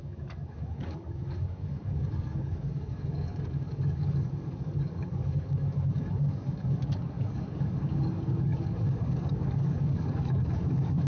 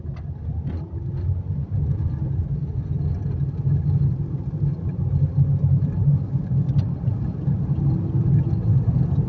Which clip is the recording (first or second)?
second